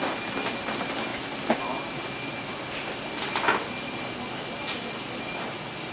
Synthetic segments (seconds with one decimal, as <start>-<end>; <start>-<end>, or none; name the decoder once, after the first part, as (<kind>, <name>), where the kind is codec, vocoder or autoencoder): none